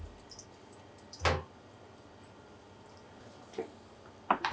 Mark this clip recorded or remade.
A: recorded